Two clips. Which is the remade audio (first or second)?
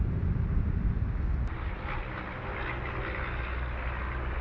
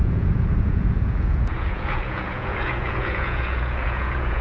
second